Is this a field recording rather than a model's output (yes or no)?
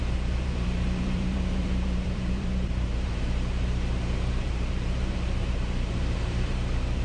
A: no